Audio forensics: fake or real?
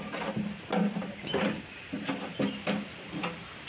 real